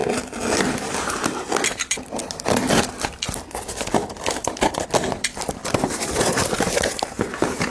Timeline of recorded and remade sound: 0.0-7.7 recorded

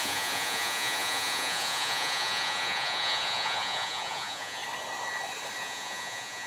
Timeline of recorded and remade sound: 0.0-4.6 remade; 4.6-5.6 recorded; 5.6-6.5 remade

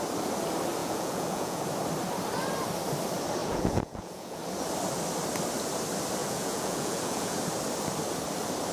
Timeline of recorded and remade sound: 0.0-0.8 recorded; 0.8-1.6 remade; 1.6-3.4 recorded; 3.4-4.4 remade; 4.4-6.2 recorded; 6.2-7.4 remade; 7.4-8.7 recorded

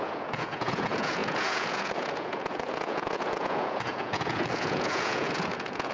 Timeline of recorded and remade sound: 0.0-5.9 remade